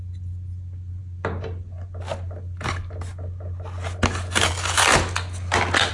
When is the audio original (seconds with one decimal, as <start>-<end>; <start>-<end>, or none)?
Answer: 0.0-5.9